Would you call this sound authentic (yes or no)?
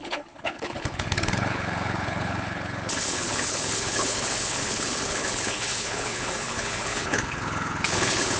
no